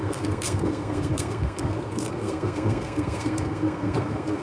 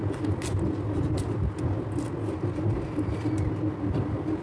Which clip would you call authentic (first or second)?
second